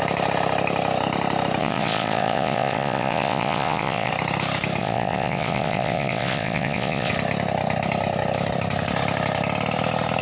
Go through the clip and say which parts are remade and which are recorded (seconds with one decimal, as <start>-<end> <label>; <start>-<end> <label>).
0.0-1.6 recorded; 1.6-4.1 remade; 4.1-4.8 recorded; 4.8-7.1 remade; 7.1-10.2 recorded